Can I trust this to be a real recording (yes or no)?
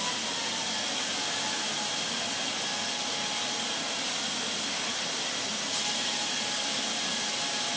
yes